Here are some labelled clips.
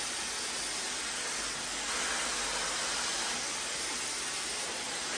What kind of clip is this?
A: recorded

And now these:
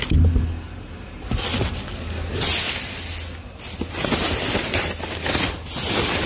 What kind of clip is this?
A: recorded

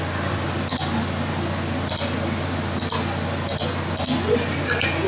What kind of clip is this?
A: recorded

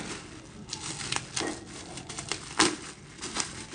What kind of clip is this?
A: recorded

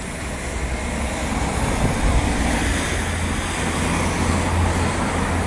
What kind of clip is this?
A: recorded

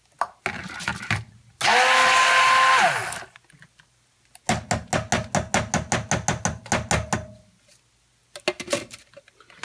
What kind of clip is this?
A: recorded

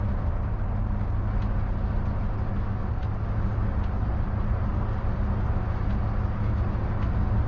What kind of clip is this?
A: recorded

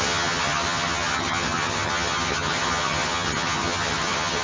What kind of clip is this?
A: remade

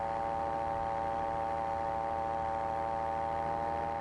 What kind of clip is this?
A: recorded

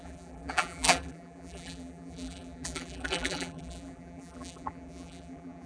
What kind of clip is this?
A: remade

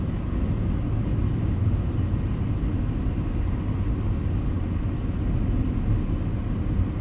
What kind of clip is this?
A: recorded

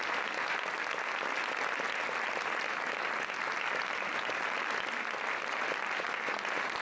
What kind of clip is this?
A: recorded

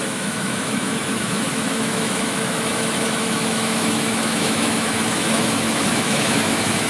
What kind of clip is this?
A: remade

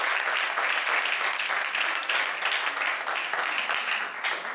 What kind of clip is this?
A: recorded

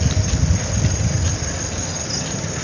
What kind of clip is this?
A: recorded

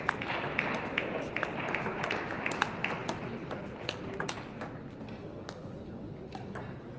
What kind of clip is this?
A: recorded